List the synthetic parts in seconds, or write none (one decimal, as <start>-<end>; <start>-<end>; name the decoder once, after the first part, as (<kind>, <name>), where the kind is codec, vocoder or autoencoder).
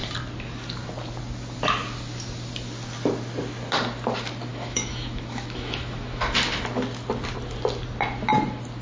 4.5-6.2 (autoencoder, DAC-VAE)